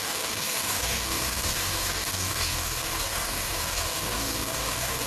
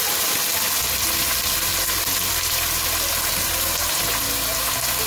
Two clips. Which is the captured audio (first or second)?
second